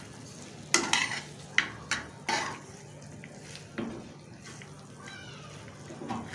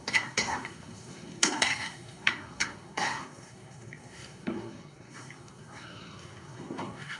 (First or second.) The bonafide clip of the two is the first